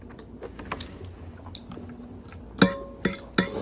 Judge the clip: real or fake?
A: real